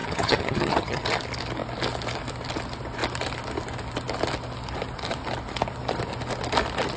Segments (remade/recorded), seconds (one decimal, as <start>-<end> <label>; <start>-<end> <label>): 0.0-1.0 remade; 1.0-7.0 recorded